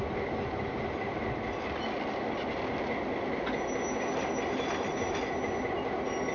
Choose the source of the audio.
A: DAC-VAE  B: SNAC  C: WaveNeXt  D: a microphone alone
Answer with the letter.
D